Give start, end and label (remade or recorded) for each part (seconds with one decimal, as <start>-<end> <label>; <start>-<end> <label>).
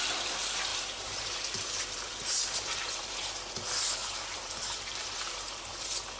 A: 0.0-0.7 recorded; 0.7-3.3 remade; 3.3-4.0 recorded; 4.0-5.6 remade; 5.6-6.2 recorded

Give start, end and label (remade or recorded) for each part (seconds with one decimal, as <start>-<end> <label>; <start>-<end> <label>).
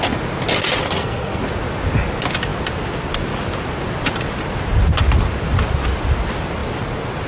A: 0.0-0.8 recorded; 0.8-1.4 remade; 1.4-7.3 recorded